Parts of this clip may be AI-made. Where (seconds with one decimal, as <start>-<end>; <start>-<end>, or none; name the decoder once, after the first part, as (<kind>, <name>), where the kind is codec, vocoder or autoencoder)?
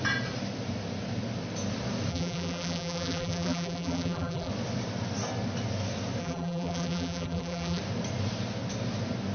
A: 2.1-4.5 (vocoder, BigVGAN v2); 6.2-7.8